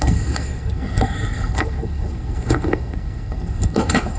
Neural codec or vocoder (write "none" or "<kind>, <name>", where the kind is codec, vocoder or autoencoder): codec, SNAC